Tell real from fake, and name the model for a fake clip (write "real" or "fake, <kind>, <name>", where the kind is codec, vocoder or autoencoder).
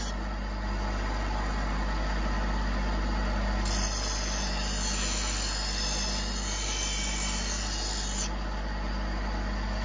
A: real